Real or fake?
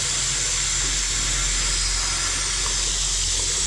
real